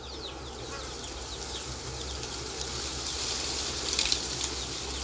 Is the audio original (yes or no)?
yes